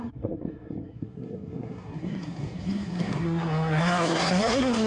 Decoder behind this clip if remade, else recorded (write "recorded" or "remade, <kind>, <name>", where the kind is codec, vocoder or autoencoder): remade, codec, SNAC